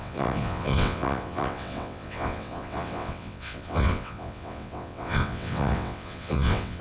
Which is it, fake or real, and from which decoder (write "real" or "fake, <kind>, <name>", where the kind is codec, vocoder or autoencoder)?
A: fake, vocoder, WaveNeXt